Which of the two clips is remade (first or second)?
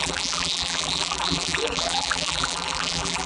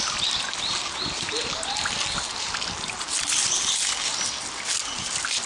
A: first